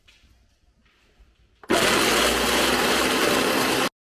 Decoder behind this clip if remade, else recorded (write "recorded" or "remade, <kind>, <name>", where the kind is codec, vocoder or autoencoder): recorded